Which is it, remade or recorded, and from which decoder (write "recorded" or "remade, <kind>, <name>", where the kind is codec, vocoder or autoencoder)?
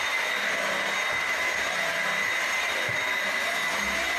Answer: recorded